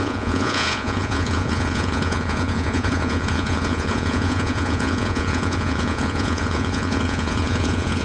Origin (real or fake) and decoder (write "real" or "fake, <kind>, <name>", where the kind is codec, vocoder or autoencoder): fake, vocoder, Vocos